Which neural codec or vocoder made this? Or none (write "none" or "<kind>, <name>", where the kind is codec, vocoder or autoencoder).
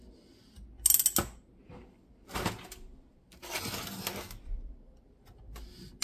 none